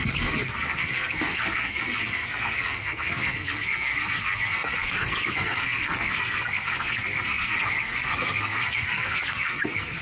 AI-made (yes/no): yes